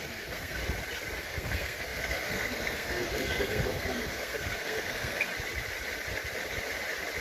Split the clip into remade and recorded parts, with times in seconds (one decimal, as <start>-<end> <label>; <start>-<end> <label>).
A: 0.0-0.6 remade; 0.6-1.2 recorded; 1.2-5.3 remade; 5.3-7.2 recorded